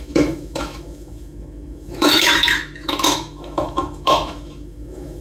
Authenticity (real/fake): fake